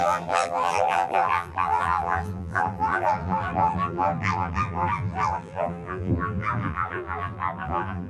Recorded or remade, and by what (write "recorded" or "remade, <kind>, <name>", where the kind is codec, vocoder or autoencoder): remade, vocoder, BigVGAN v2